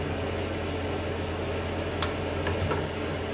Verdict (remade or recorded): recorded